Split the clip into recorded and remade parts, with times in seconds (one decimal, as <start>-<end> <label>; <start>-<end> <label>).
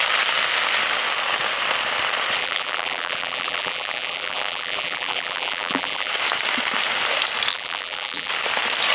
0.0-2.4 recorded; 2.4-6.1 remade; 6.1-7.5 recorded; 7.5-8.3 remade; 8.3-8.9 recorded